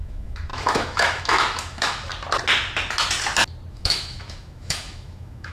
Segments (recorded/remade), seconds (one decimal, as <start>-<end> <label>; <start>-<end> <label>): 0.0-2.1 remade; 2.1-3.7 recorded; 3.7-5.5 remade